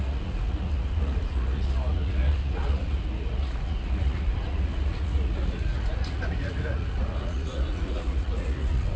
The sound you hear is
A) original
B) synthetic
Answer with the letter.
B